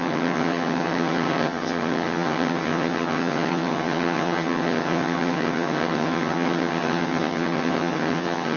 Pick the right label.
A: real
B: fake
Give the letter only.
B